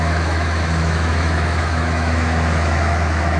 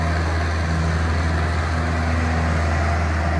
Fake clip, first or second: first